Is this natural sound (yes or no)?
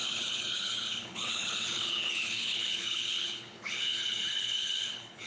no